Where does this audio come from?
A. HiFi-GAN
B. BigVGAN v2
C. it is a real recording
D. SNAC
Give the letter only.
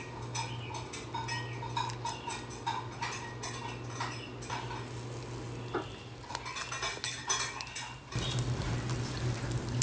C